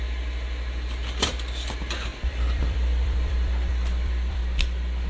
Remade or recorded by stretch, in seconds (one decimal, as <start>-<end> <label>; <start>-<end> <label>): 0.0-4.4 remade; 4.4-5.1 recorded